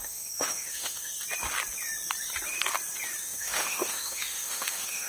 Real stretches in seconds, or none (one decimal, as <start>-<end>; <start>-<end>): 1.1-3.2